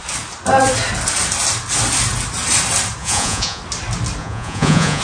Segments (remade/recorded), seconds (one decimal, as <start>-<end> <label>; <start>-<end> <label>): 0.0-3.0 recorded; 3.0-3.6 remade; 3.6-4.2 recorded; 4.2-5.0 remade

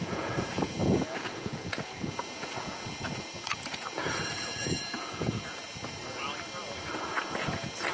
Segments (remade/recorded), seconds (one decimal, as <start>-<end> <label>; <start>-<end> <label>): 0.0-6.0 remade; 6.0-6.9 recorded; 6.9-7.9 remade

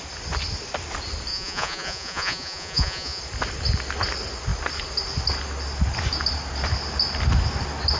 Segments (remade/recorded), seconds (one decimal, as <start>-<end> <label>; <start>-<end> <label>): 0.0-1.3 recorded; 1.3-3.2 remade; 3.2-8.0 recorded

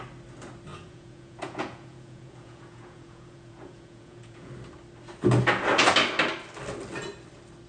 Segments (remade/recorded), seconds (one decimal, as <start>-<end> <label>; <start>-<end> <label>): 0.0-0.7 recorded; 0.7-4.5 remade; 4.5-7.7 recorded